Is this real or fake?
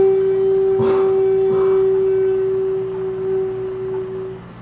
real